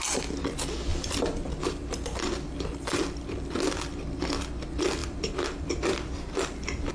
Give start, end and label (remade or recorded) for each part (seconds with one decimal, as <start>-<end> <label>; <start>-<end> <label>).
0.0-0.9 recorded; 0.9-3.8 remade; 3.8-5.0 recorded; 5.0-6.9 remade